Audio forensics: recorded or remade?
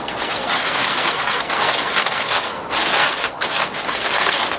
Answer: remade